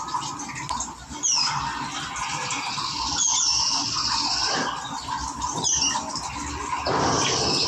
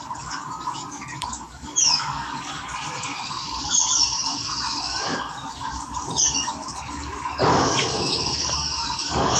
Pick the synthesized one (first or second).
second